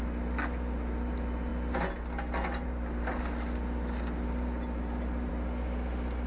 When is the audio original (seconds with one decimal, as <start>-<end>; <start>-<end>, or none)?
0.0-6.3